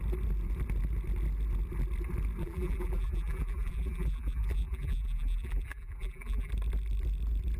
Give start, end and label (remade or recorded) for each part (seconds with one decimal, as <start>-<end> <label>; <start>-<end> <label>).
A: 0.0-2.4 recorded; 2.4-6.5 remade; 6.5-7.6 recorded